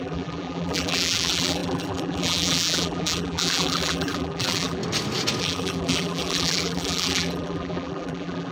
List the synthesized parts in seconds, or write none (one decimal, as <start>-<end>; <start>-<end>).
0.0-4.8; 5.4-8.5

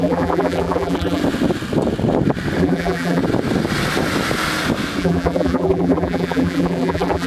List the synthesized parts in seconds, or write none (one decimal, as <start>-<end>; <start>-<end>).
0.0-1.2; 2.6-3.2; 5.0-7.3